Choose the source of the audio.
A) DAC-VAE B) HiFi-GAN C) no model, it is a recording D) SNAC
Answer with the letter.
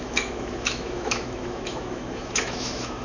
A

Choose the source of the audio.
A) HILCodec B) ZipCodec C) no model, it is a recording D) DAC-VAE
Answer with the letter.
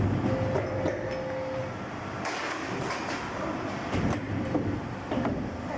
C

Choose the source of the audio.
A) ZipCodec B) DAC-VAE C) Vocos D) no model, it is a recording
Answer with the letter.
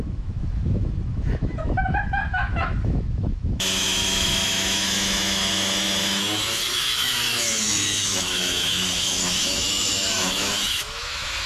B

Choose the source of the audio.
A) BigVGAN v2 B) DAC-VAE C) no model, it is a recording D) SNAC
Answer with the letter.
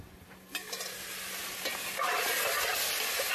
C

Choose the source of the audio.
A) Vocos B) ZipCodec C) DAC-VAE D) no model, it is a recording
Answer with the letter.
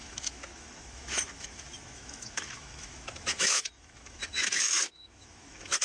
C